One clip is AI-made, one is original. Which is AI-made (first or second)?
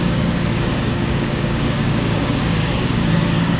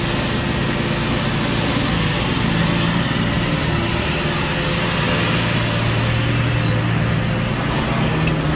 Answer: first